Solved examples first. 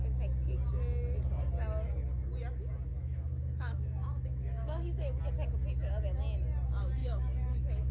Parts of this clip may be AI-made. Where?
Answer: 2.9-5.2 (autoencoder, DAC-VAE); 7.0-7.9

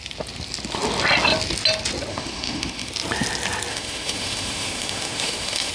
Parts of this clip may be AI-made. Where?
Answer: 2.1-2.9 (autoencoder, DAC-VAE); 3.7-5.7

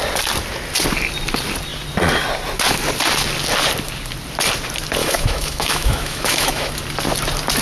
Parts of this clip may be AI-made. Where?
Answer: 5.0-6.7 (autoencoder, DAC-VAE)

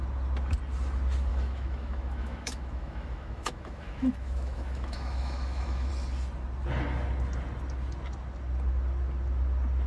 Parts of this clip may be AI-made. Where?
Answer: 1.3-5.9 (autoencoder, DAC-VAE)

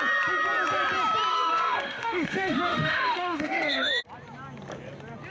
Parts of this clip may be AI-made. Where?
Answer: 1.3-4.0 (autoencoder, DAC-VAE)

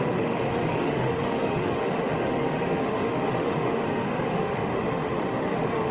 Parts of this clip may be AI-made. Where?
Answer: 0.0-5.9 (autoencoder, DAC-VAE)